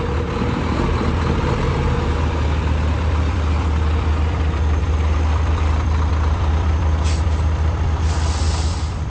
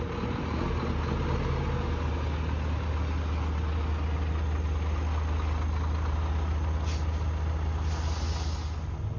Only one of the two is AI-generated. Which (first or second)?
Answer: first